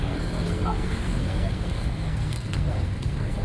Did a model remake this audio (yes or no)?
yes